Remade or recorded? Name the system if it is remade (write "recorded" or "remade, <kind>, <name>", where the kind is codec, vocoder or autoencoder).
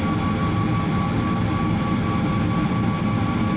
recorded